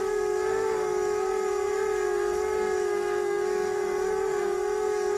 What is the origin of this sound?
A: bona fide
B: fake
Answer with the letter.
B